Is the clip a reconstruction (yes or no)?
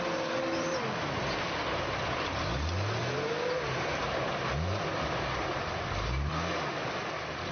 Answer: no